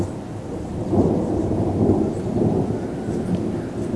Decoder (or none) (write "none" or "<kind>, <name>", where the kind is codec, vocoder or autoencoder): none